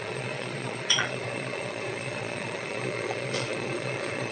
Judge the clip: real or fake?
fake